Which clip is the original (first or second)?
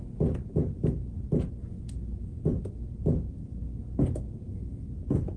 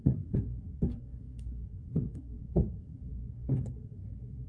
first